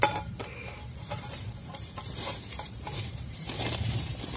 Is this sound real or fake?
fake